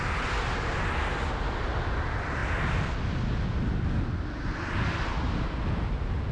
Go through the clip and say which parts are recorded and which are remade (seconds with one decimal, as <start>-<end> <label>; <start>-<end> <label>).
0.0-6.3 recorded